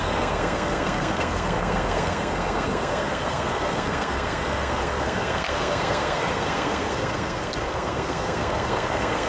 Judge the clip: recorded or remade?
remade